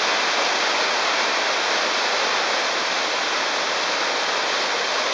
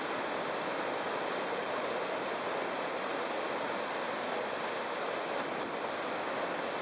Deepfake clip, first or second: second